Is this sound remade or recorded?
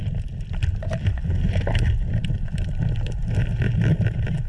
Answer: recorded